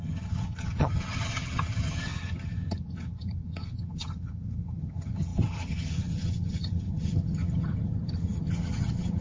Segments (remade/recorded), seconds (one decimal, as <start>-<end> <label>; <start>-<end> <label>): 0.0-9.2 remade